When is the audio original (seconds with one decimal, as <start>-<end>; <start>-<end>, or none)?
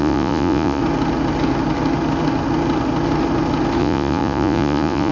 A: 0.8-3.8